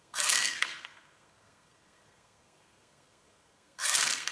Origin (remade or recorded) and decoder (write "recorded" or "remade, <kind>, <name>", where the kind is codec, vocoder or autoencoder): remade, codec, SNAC